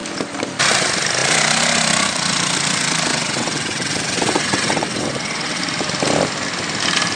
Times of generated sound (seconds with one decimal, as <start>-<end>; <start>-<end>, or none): 3.1-5.6